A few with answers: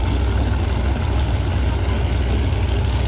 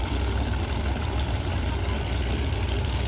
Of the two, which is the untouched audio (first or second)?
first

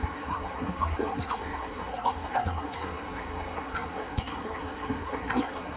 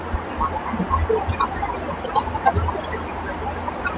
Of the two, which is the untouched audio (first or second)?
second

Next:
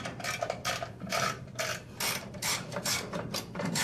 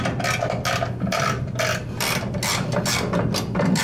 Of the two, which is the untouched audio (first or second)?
second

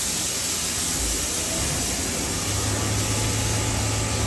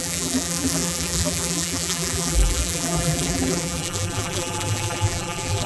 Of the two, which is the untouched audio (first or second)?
first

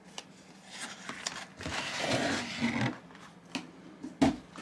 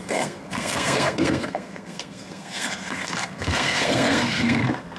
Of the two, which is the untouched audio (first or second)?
first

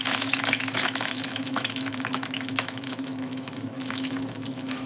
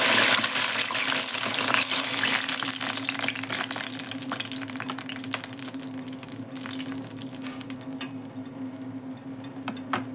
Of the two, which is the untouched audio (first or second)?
second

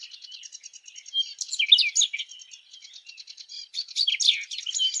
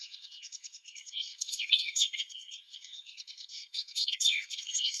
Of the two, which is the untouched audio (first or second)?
first